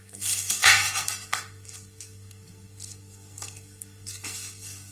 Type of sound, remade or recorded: remade